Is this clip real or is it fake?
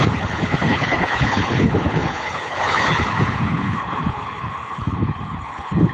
fake